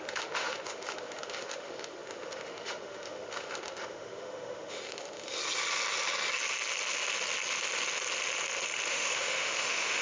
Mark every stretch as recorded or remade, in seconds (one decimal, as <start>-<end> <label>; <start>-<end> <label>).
0.0-5.4 remade; 5.4-8.9 recorded; 8.9-10.0 remade

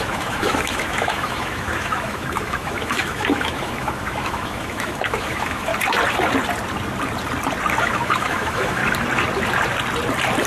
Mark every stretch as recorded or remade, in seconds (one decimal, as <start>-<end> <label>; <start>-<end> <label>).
0.0-5.7 remade; 5.7-7.8 recorded; 7.8-8.8 remade; 8.8-10.5 recorded

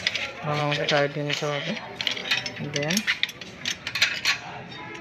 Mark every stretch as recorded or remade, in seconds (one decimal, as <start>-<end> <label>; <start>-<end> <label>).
0.0-0.6 recorded; 0.6-1.7 remade; 1.7-5.0 recorded

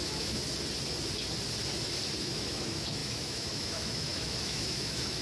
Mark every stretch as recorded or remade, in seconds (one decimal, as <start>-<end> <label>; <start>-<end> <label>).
0.0-0.4 remade; 0.4-2.2 recorded; 2.2-5.2 remade

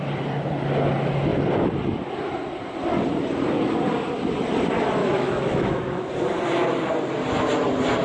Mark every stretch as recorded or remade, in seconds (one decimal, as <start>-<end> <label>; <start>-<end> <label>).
0.0-5.0 recorded; 5.0-6.1 remade; 6.1-8.0 recorded

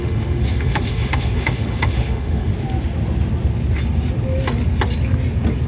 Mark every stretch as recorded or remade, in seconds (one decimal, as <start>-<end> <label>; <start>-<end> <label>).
0.0-2.5 remade; 2.5-5.7 recorded

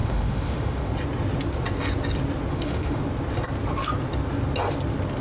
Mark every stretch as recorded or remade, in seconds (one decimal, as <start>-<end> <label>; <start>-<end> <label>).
0.0-0.9 remade; 0.9-2.5 recorded; 2.5-3.0 remade; 3.0-5.2 recorded